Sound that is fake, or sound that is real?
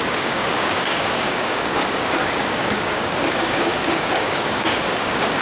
fake